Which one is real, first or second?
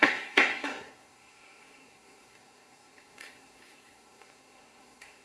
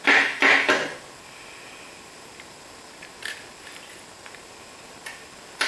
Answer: second